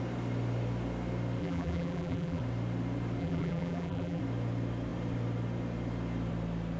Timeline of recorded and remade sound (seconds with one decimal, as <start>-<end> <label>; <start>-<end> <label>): 0.0-1.4 recorded; 1.4-2.4 remade; 2.4-3.2 recorded; 3.2-4.2 remade; 4.2-6.8 recorded